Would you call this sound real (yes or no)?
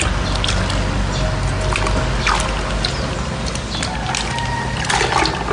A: yes